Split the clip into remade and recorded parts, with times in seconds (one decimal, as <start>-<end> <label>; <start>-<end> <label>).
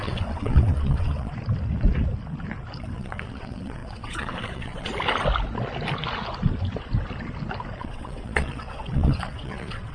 0.0-1.3 remade; 1.3-2.8 recorded; 2.8-4.9 remade; 4.9-7.8 recorded; 7.8-9.9 remade